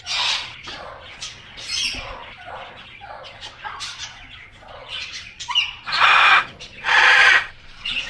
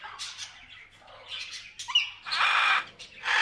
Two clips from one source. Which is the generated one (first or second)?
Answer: first